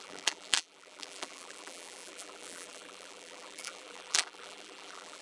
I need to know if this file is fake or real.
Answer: fake